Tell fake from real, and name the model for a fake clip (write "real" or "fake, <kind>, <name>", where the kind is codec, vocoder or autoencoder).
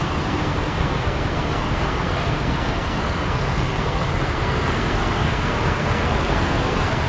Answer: fake, codec, SNAC